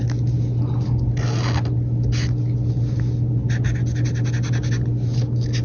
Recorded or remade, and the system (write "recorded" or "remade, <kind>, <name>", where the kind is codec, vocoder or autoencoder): recorded